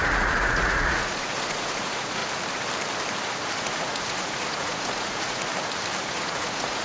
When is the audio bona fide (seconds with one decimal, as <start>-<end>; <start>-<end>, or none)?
2.2-3.6; 5.5-6.0